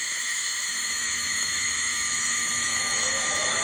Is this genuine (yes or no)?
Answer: no